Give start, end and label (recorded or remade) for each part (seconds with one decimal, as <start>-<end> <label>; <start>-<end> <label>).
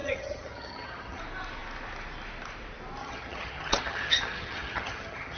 0.0-1.2 remade; 1.2-3.0 recorded; 3.0-5.4 remade